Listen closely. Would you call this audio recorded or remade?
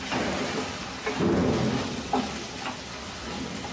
recorded